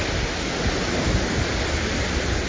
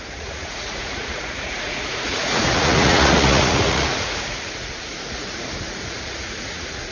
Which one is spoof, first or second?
second